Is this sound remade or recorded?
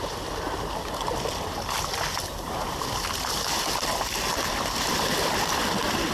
recorded